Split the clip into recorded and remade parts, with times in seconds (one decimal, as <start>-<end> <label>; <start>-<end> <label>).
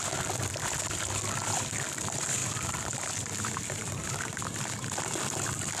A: 0.0-5.8 recorded